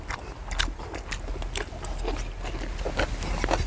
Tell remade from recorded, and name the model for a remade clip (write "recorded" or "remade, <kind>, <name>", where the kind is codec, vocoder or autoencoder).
recorded